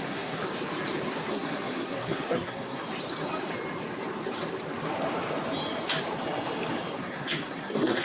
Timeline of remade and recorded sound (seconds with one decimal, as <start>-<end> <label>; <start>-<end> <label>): 0.0-0.4 remade; 0.4-1.3 recorded; 1.3-2.8 remade; 2.8-7.0 recorded; 7.0-8.0 remade